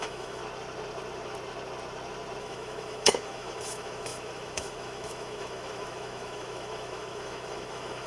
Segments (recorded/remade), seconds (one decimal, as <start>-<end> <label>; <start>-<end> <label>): 0.0-0.4 remade; 0.4-2.4 recorded; 2.4-8.1 remade